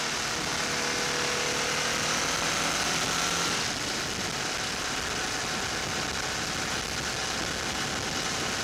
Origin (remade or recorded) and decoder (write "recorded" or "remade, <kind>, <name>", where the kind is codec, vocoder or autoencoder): recorded